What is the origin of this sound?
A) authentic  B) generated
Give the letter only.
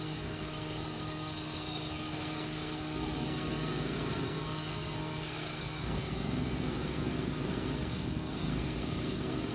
B